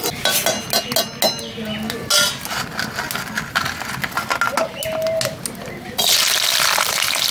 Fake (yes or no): no